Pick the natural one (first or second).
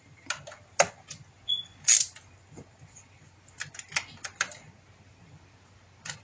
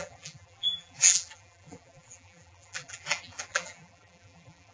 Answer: first